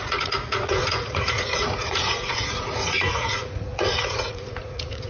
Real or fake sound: fake